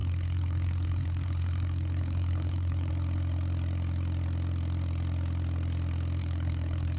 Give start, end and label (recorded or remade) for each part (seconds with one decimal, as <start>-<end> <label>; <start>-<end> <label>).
0.0-2.9 remade; 2.9-6.2 recorded; 6.2-7.0 remade